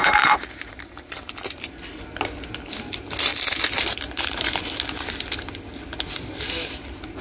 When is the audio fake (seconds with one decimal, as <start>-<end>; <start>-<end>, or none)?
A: 0.0-1.3; 3.3-4.6